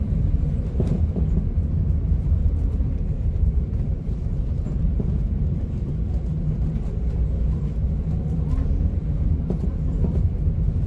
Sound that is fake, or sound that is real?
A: fake